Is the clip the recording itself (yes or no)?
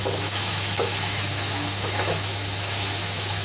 no